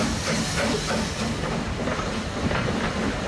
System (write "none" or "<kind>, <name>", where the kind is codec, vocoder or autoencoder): none